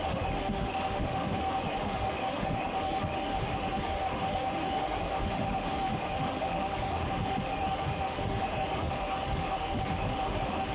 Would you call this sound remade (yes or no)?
yes